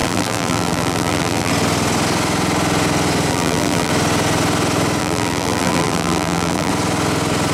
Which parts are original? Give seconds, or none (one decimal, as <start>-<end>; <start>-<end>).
1.5-3.3; 3.9-5.0; 6.7-7.5